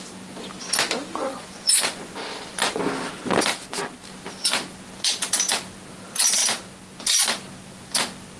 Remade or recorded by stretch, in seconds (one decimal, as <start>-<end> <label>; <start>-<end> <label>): 0.0-1.2 recorded; 1.2-2.8 remade; 2.8-8.4 recorded